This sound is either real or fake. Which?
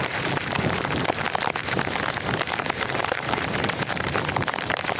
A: fake